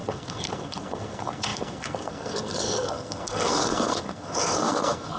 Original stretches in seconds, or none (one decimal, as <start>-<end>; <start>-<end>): none